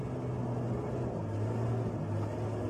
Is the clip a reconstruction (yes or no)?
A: no